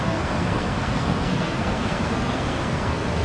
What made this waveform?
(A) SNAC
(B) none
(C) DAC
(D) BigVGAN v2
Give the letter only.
A